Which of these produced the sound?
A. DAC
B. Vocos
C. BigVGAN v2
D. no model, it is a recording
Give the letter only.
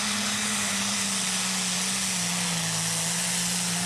D